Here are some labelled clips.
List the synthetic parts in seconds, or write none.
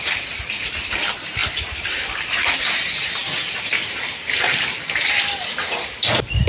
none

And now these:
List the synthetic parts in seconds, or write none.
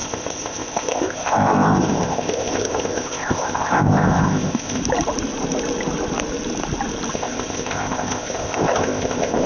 0.0-4.8 (codec, ZipCodec); 7.1-9.5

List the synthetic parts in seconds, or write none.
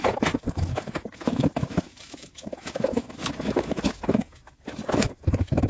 0.0-5.7 (autoencoder, DAC-VAE)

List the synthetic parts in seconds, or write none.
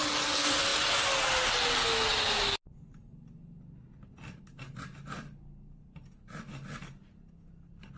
none